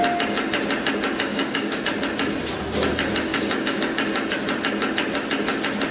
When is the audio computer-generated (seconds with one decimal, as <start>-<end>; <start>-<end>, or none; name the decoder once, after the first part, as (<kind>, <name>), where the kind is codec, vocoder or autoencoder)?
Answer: 1.3-1.8 (codec, DAC); 3.3-3.8